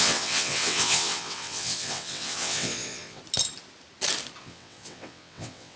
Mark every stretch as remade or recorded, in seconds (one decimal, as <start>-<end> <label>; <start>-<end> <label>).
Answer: 0.0-3.2 remade; 3.2-4.4 recorded; 4.4-5.8 remade